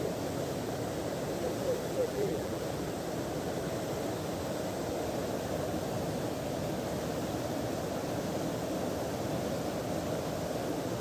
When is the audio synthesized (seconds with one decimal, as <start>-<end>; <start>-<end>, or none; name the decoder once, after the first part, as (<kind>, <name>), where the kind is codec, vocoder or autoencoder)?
2.0-2.6 (vocoder, BigVGAN v2)